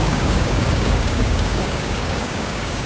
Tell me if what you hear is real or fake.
fake